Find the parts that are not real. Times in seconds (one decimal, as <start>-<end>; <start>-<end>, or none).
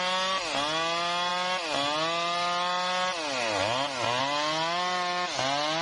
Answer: none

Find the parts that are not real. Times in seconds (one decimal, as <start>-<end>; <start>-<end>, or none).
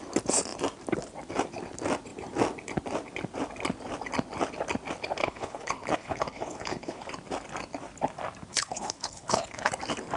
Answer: 5.2-7.1; 8.5-9.7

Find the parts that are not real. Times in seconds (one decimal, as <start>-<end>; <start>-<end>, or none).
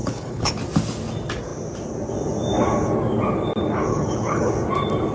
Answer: 0.0-0.5; 3.9-4.5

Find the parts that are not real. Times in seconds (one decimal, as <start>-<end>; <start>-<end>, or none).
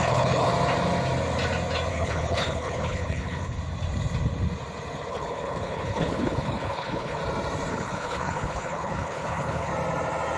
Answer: 0.0-0.5; 1.9-3.6; 5.1-7.2; 7.7-9.7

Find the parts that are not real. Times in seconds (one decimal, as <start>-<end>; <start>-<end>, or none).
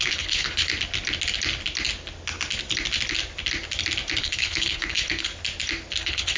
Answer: 0.0-0.7; 4.2-5.3; 6.0-6.4